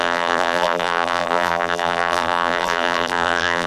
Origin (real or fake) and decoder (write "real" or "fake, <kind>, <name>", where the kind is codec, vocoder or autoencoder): fake, vocoder, BigVGAN v2